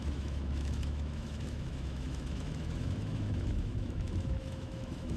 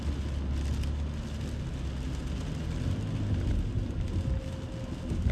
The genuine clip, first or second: second